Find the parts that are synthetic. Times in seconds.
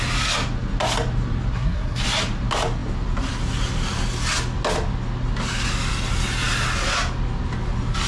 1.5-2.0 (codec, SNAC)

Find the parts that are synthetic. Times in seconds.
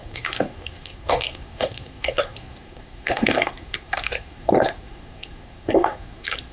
0.0-6.5 (codec, SNAC)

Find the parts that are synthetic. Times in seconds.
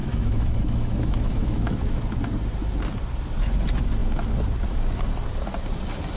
0.0-2.0 (autoencoder, DAC-VAE)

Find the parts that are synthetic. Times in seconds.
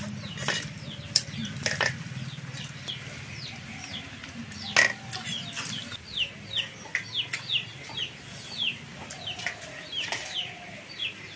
none